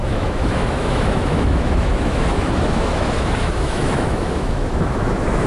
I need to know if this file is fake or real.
fake